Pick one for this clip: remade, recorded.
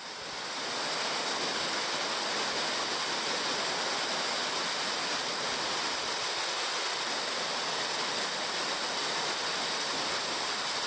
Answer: recorded